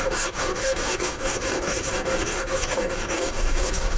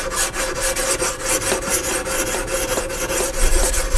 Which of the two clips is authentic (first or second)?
second